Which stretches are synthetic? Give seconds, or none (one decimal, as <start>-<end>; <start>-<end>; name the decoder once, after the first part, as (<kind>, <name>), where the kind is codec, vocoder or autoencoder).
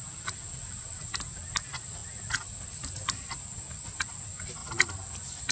4.6-5.1 (vocoder, BigVGAN v2)